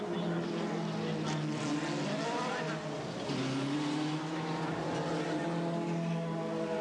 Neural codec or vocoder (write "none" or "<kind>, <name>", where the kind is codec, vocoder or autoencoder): none